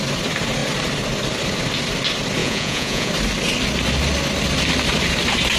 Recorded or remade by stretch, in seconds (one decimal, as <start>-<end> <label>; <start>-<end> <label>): 0.0-2.4 recorded; 2.4-3.1 remade; 3.1-5.6 recorded